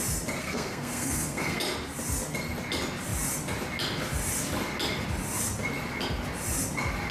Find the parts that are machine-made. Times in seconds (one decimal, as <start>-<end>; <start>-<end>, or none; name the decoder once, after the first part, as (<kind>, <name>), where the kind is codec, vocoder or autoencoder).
0.4-1.6 (codec, SNAC)